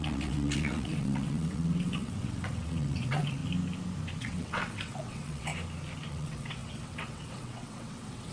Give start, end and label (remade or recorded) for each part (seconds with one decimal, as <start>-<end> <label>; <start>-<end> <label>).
0.0-3.4 remade; 3.4-4.2 recorded; 4.2-5.5 remade; 5.5-6.1 recorded; 6.1-8.3 remade